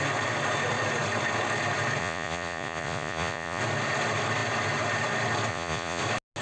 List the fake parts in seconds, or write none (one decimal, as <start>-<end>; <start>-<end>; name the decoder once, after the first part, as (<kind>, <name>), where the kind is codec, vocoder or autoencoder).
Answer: 2.0-3.6 (vocoder, Vocos); 5.5-6.0